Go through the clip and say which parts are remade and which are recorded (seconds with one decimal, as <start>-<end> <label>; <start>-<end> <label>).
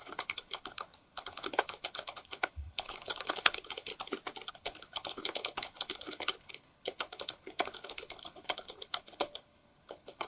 0.0-3.9 remade; 3.9-4.5 recorded; 4.5-10.3 remade